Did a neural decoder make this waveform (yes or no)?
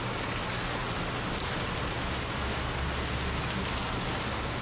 no